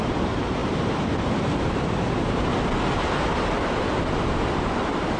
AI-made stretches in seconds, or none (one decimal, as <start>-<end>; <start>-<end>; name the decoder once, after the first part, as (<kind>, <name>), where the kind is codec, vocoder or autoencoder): 0.0-2.5 (vocoder, BigVGAN v2)